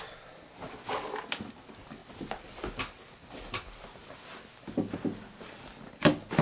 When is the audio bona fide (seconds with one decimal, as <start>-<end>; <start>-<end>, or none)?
0.0-6.4